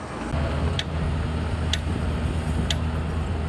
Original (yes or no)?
yes